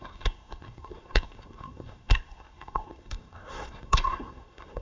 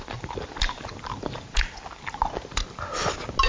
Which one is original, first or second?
second